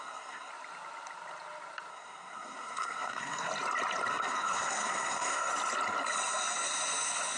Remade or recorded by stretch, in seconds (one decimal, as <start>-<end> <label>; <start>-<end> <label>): 0.0-0.5 remade; 0.5-1.9 recorded; 1.9-3.5 remade; 3.5-4.1 recorded; 4.1-5.5 remade; 5.5-7.4 recorded